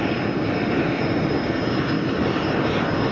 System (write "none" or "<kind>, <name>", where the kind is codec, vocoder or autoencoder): none